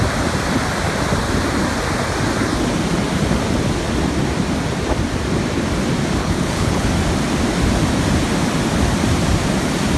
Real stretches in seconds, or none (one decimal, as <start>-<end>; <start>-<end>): 0.0-6.2; 6.9-10.0